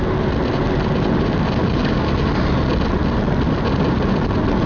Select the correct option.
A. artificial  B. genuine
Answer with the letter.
B